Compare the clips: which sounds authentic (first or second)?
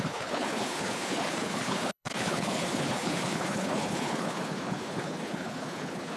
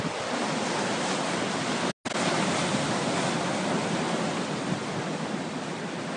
second